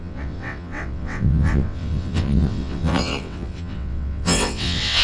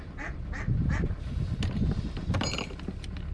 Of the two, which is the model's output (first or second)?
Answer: first